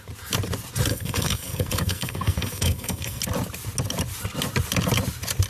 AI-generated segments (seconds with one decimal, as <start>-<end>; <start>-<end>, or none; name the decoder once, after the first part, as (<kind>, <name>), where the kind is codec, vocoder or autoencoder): 0.9-3.2 (codec, SNAC)